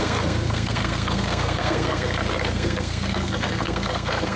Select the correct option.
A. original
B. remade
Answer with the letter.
B